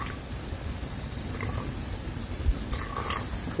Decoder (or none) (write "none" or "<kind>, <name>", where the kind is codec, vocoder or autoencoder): none